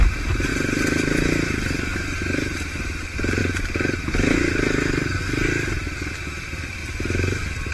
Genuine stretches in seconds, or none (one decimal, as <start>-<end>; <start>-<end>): 0.0-7.7